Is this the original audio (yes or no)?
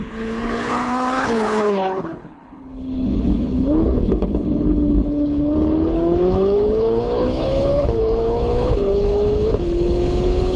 no